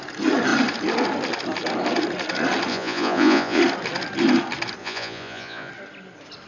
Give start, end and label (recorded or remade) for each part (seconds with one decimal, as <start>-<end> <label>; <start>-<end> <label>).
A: 0.0-2.7 recorded; 2.7-3.6 remade; 3.6-4.8 recorded; 4.8-5.7 remade; 5.7-6.5 recorded